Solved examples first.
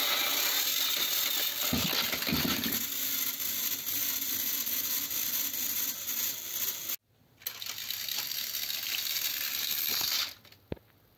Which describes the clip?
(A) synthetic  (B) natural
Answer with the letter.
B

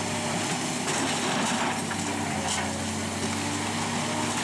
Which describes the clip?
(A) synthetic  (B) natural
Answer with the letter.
B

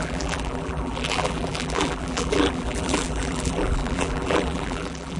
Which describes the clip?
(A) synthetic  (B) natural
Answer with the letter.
A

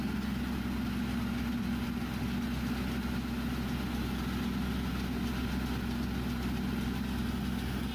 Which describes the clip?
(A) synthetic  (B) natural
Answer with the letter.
B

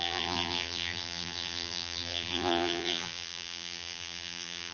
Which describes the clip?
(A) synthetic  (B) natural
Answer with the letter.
A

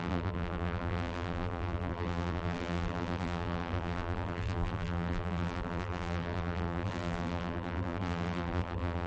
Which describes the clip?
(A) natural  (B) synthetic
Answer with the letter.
B